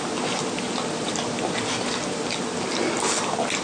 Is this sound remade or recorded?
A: recorded